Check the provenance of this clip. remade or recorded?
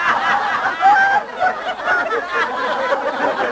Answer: recorded